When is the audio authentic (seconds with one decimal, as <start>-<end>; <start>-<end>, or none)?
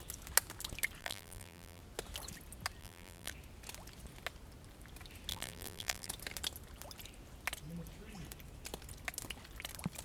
0.0-1.0; 1.8-2.8; 3.3-5.3; 6.1-10.0